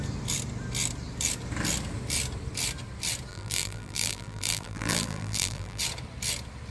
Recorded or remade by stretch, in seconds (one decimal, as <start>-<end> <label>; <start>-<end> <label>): 0.0-3.3 recorded; 3.3-5.8 remade; 5.8-6.7 recorded